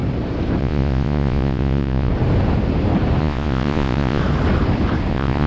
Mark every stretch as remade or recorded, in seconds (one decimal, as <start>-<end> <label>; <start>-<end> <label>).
0.0-0.6 recorded; 0.6-2.1 remade; 2.1-3.2 recorded; 3.2-4.2 remade; 4.2-5.1 recorded; 5.1-5.5 remade